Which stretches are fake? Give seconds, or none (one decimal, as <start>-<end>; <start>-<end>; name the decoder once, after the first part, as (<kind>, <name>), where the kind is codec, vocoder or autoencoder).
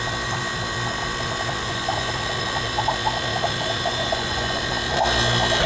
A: 1.6-2.1 (vocoder, Vocos); 3.9-4.6